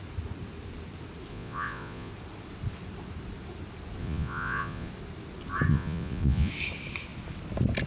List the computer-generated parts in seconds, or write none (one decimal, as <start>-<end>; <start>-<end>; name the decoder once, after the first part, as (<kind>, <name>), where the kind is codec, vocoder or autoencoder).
1.3-2.1 (vocoder, Vocos); 4.0-4.9; 5.7-6.5